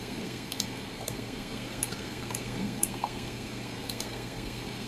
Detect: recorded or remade remade